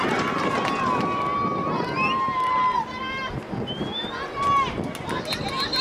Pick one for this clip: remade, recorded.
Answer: recorded